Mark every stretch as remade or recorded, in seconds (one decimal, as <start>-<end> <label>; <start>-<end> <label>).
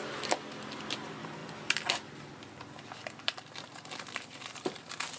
0.0-1.4 recorded; 1.4-4.5 remade; 4.5-5.2 recorded